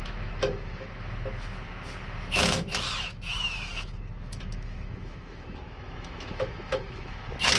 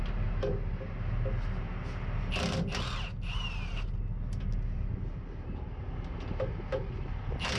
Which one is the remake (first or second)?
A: first